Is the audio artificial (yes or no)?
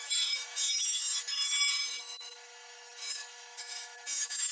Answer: yes